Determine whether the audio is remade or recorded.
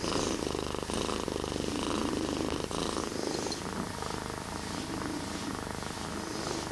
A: recorded